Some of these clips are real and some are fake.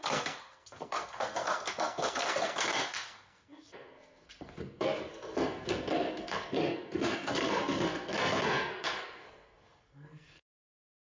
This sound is fake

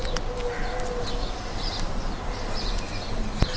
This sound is real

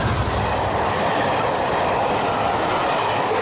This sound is real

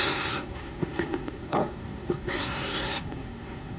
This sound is fake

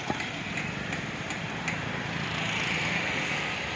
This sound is real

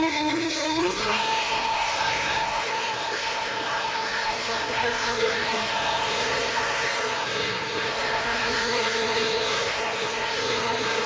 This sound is fake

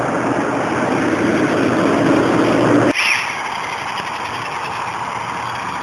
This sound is real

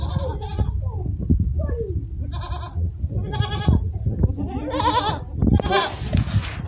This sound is real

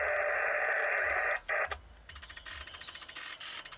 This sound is real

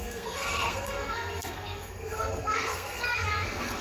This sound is fake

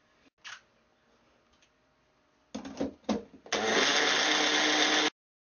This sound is real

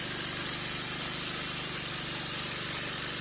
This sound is real